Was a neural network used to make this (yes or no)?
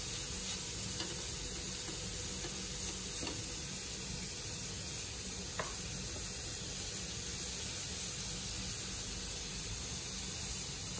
no